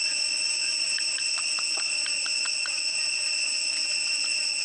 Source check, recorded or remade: recorded